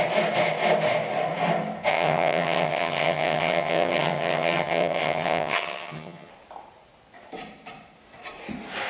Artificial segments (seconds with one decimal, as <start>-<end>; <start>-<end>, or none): 1.9-6.3